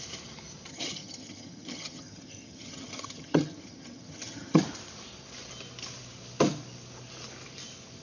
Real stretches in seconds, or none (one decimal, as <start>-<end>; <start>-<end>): 0.0-0.7; 4.6-8.0